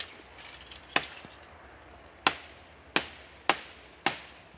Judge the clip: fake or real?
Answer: real